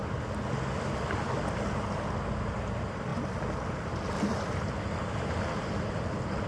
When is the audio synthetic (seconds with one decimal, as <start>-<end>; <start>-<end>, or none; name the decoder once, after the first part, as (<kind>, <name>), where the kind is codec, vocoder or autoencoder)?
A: none